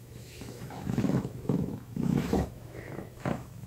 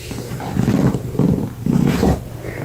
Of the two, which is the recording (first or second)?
second